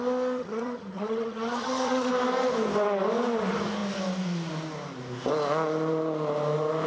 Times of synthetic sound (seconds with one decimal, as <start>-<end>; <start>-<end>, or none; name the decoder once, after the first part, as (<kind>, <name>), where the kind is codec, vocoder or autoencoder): 0.4-2.1 (vocoder, HiFi-GAN)